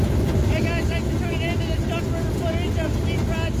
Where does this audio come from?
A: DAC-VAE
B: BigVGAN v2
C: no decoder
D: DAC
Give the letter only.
C